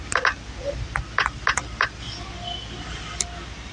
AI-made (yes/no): no